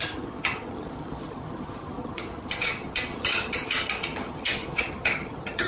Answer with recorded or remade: remade